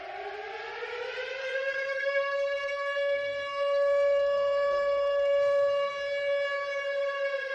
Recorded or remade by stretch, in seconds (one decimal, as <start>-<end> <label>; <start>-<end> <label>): 0.0-1.4 recorded; 1.4-5.9 remade; 5.9-7.5 recorded